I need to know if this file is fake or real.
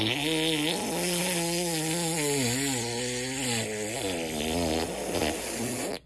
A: real